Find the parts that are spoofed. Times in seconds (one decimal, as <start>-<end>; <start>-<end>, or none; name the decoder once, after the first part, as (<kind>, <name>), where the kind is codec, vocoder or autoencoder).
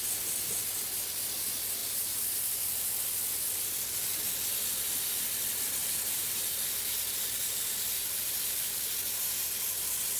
1.8-4.2 (vocoder, BigVGAN v2); 5.8-9.0